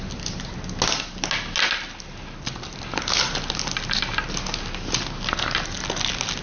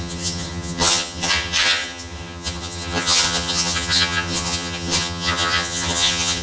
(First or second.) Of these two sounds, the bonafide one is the first